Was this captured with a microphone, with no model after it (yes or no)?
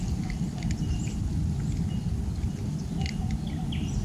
yes